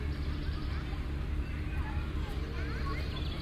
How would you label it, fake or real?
fake